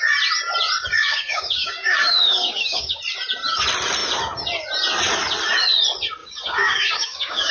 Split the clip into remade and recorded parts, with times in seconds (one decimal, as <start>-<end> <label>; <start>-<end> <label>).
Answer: 0.0-1.0 recorded; 1.0-3.0 remade; 3.0-6.2 recorded; 6.2-7.5 remade